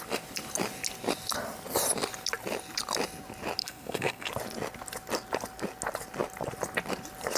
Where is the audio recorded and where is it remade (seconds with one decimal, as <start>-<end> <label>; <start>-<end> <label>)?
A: 0.0-3.6 recorded; 3.6-4.3 remade; 4.3-7.4 recorded